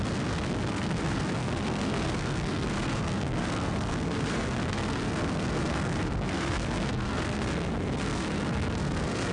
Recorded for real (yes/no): no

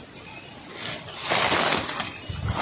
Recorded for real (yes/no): yes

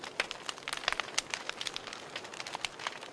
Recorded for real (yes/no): yes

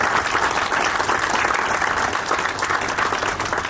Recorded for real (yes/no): yes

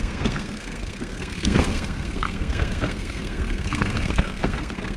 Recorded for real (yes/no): no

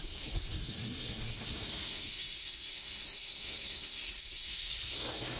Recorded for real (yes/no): no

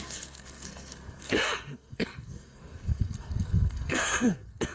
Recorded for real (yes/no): no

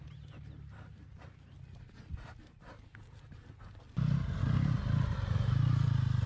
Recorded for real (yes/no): yes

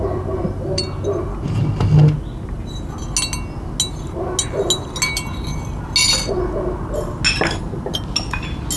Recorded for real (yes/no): yes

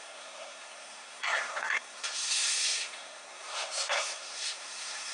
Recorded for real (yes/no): no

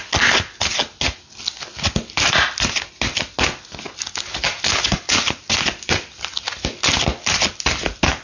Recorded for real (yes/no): yes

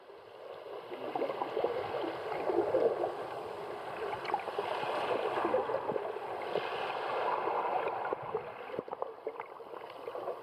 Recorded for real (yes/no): yes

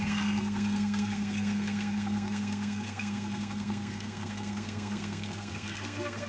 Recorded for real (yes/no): no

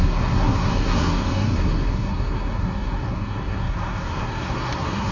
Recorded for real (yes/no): no